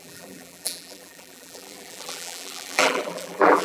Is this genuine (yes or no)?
no